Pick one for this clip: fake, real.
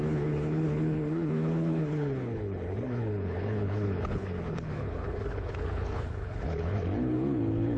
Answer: fake